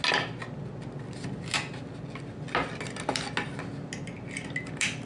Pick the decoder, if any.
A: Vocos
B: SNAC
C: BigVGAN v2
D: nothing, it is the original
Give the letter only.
D